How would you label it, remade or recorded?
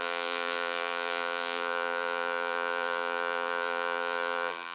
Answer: remade